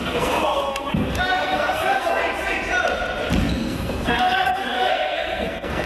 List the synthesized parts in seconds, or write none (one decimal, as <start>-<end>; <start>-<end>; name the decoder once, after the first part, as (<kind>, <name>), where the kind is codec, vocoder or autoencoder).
0.0-2.2 (codec, SNAC); 3.4-5.9